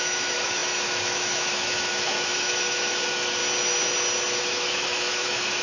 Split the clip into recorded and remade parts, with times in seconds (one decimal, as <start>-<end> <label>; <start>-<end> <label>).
0.0-3.4 remade; 3.4-4.4 recorded; 4.4-5.6 remade